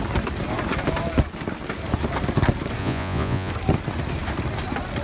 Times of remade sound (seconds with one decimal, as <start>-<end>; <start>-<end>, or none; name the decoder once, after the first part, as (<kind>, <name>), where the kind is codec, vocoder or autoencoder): 2.8-3.5 (vocoder, Vocos)